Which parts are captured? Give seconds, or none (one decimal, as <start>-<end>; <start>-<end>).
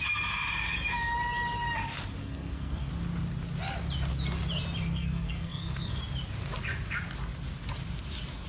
0.0-2.2; 2.9-4.9; 6.0-8.5